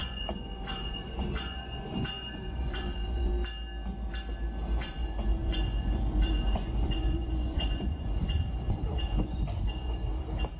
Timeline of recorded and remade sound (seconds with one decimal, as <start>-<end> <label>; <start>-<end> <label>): 0.0-3.3 remade; 3.3-4.8 recorded; 4.8-10.1 remade; 10.1-10.6 recorded